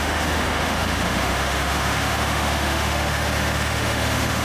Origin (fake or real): fake